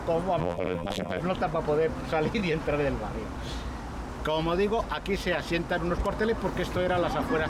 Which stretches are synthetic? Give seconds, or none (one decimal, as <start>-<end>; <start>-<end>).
0.4-1.2